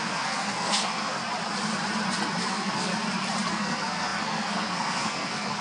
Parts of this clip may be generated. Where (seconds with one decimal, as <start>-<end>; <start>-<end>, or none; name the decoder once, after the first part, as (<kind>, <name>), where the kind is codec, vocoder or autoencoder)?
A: 0.0-1.2 (codec, SNAC); 2.4-2.9; 3.5-5.6